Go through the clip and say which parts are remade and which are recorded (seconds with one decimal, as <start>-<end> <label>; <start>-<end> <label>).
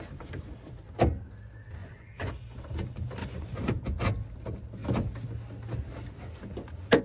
0.0-1.8 recorded; 1.8-2.3 remade; 2.3-3.2 recorded; 3.2-3.7 remade; 3.7-7.0 recorded